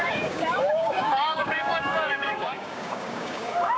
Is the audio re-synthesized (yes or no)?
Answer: yes